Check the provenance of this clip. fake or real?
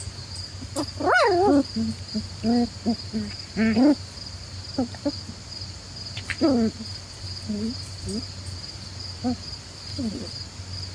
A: real